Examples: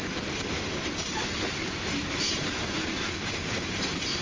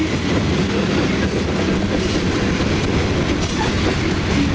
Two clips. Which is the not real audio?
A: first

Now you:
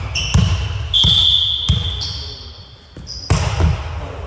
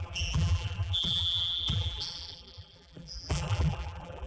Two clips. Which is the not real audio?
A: second